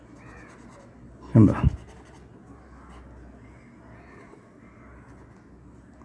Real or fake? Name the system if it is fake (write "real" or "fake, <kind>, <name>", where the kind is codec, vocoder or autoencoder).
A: real